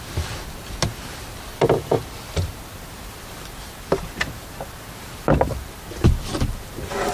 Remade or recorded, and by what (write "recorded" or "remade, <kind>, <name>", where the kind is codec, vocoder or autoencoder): recorded